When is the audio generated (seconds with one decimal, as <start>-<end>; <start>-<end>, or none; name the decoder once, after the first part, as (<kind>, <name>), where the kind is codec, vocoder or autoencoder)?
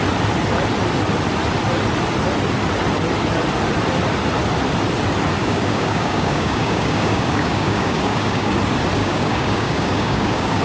5.4-8.6 (codec, DAC); 9.0-10.6